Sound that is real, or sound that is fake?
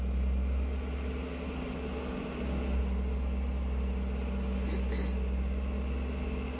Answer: real